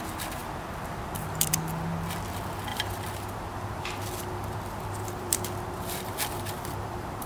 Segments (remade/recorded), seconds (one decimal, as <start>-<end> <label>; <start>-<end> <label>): 0.0-0.4 recorded; 0.4-1.5 remade; 1.5-2.7 recorded; 2.7-7.3 remade